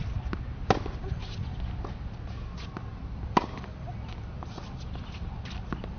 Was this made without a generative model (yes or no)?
yes